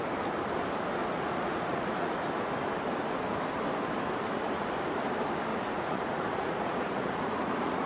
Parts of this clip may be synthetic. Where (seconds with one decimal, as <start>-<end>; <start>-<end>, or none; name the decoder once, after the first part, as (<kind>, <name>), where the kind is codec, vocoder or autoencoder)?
1.0-2.3 (vocoder, Vocos); 5.5-7.9